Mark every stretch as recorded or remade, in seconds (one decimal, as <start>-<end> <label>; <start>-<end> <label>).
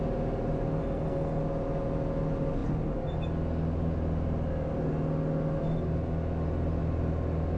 0.0-0.8 recorded; 0.8-1.4 remade; 1.4-7.6 recorded